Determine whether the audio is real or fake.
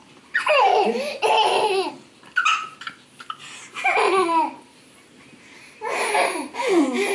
real